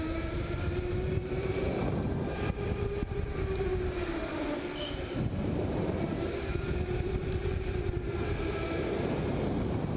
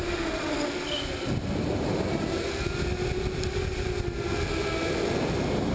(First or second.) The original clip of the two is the second